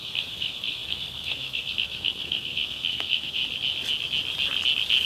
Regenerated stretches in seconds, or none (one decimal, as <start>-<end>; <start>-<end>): 0.0-3.4